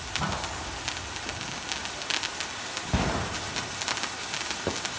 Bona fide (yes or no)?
yes